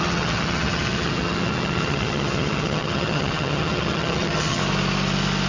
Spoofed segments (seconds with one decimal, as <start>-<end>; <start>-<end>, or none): 0.0-4.6